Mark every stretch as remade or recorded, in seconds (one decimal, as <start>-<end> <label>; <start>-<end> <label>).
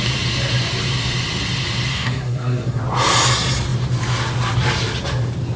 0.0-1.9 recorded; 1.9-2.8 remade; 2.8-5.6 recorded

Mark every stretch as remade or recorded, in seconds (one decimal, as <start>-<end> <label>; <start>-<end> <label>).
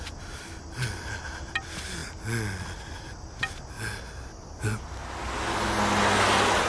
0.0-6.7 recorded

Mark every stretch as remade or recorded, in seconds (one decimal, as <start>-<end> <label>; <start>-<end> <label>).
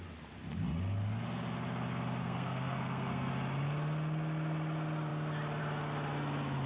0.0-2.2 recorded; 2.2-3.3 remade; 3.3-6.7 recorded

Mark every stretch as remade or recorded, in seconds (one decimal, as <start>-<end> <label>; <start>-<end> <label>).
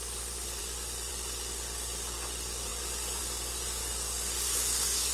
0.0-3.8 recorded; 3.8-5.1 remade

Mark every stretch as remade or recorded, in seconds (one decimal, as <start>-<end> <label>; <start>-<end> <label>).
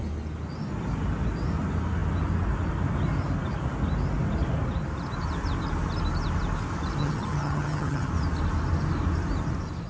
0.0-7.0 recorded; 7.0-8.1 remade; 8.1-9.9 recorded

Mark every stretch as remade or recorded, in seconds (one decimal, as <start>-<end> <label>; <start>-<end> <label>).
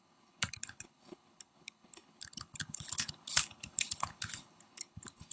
0.0-5.3 remade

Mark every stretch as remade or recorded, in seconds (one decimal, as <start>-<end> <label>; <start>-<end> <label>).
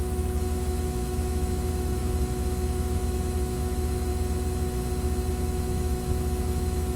0.0-4.1 remade; 4.1-5.3 recorded; 5.3-7.0 remade